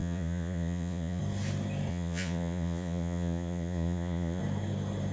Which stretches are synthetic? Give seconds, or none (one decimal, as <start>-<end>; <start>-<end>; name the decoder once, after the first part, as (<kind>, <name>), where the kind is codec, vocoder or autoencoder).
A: 0.0-1.2 (vocoder, Vocos); 1.9-4.4